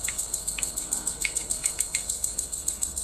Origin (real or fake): fake